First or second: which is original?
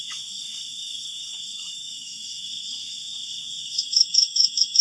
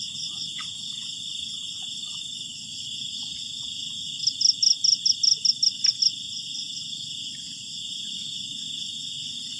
second